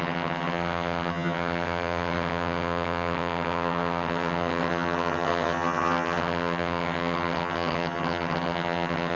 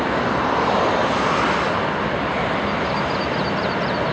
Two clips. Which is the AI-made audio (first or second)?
first